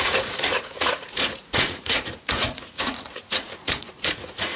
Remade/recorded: remade